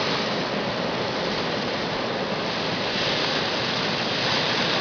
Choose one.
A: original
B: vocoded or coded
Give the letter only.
A